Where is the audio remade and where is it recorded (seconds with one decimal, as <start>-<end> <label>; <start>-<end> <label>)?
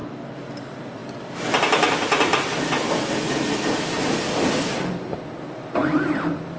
0.0-0.5 recorded; 0.5-1.0 remade; 1.0-1.6 recorded; 1.6-5.8 remade; 5.8-6.6 recorded